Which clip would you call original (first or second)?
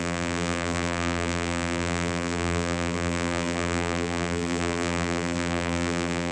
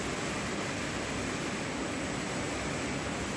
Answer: second